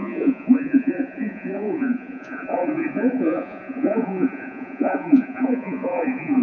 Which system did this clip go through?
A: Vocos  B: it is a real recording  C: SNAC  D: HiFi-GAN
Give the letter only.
A